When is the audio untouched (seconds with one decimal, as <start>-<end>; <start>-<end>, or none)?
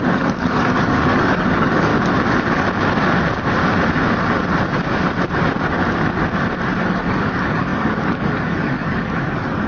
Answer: 1.9-6.8